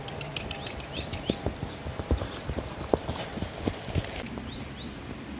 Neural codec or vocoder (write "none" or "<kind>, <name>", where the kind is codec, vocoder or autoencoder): vocoder, BigVGAN v2